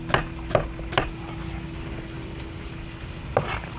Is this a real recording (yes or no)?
yes